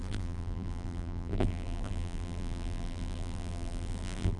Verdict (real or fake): fake